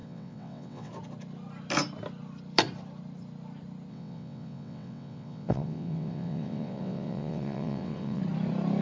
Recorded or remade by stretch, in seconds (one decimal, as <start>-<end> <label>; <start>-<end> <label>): 0.0-0.9 remade; 0.9-3.9 recorded; 3.9-8.2 remade; 8.2-8.8 recorded

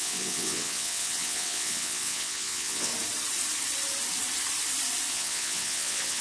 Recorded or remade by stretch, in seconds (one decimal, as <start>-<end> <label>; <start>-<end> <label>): 0.0-2.9 remade; 2.9-5.1 recorded; 5.1-6.2 remade

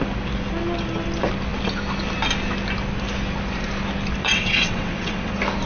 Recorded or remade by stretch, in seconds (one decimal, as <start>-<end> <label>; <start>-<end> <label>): 0.0-4.2 recorded; 4.2-5.3 remade; 5.3-5.7 recorded

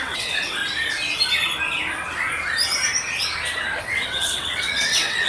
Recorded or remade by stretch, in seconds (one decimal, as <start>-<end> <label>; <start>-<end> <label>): 0.0-0.6 remade; 0.6-3.8 recorded; 3.8-5.3 remade

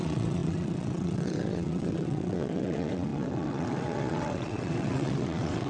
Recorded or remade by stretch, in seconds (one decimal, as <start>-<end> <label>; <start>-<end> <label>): 0.0-5.7 remade

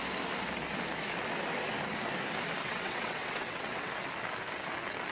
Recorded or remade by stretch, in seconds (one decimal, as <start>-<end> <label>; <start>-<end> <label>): 0.0-2.6 recorded; 2.6-3.9 remade; 3.9-5.1 recorded